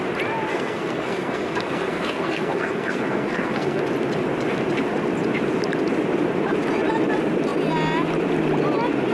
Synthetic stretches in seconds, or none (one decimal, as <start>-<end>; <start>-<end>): 0.5-3.8